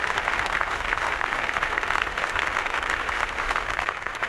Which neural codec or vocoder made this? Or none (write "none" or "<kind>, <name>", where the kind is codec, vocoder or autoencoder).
autoencoder, DAC-VAE